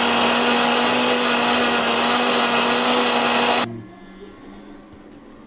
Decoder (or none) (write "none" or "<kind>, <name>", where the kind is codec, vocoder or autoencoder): none